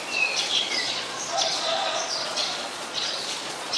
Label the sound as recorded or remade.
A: remade